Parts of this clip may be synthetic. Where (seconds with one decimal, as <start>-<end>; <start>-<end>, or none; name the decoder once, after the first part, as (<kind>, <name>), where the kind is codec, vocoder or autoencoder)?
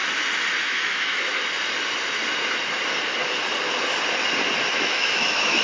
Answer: 0.6-1.3 (autoencoder, DAC-VAE); 4.7-5.6